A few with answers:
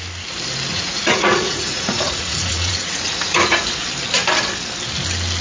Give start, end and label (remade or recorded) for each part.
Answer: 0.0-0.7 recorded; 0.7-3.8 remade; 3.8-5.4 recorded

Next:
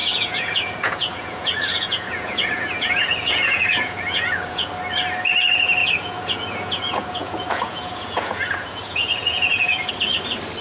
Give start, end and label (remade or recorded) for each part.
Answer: 0.0-4.7 remade; 4.7-5.8 recorded; 5.8-9.9 remade; 9.9-10.6 recorded

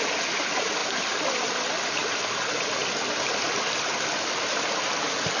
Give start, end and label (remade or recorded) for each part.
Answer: 0.0-5.4 recorded